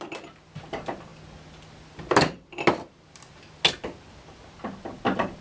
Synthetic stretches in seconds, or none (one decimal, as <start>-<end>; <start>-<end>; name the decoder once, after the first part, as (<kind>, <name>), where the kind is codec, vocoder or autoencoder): none